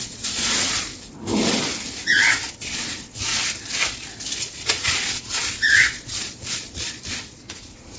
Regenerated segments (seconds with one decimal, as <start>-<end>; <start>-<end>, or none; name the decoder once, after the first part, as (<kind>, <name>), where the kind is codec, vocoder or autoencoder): 0.0-0.9 (vocoder, Vocos); 2.5-3.3; 4.4-8.0